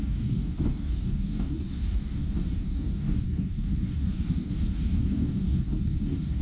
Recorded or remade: remade